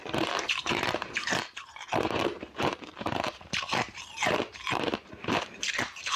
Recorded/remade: remade